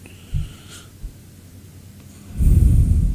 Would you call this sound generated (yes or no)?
no